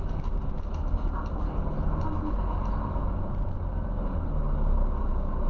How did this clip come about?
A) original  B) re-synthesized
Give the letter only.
A